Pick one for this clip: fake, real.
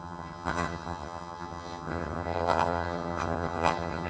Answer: fake